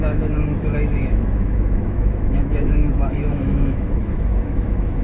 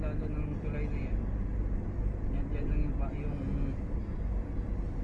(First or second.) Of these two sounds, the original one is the second